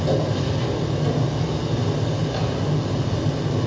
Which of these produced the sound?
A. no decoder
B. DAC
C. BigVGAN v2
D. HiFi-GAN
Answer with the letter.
A